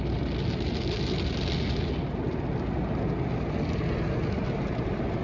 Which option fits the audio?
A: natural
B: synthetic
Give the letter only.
A